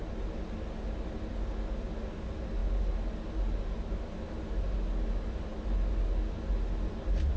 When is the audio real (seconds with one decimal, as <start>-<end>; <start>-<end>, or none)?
0.0-7.4

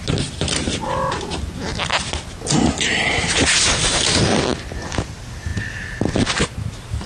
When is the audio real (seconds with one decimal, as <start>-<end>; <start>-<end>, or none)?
0.0-7.1

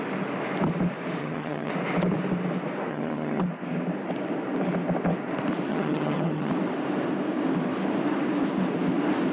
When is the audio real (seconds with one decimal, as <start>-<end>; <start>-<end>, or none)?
0.0-1.2; 1.7-2.9; 3.4-5.7; 6.5-9.3

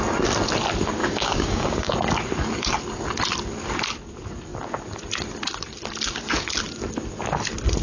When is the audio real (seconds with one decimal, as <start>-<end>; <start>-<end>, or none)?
0.0-1.0; 1.9-7.8

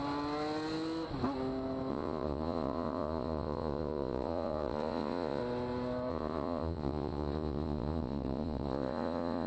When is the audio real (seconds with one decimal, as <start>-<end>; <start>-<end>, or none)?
0.0-1.9; 5.4-6.1

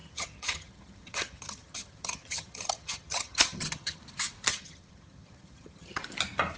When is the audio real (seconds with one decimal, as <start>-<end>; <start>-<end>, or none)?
4.0-4.5; 6.0-6.6

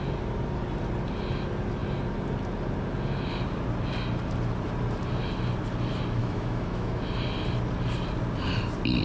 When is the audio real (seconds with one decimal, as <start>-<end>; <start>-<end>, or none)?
0.0-6.2; 7.0-9.0

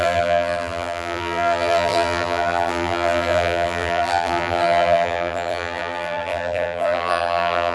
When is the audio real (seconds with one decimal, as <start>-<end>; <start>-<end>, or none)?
none